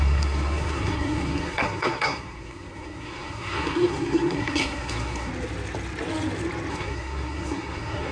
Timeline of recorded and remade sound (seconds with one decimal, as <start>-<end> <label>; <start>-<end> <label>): 0.0-5.3 remade; 5.3-6.7 recorded; 6.7-8.1 remade